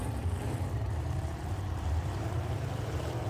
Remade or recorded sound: remade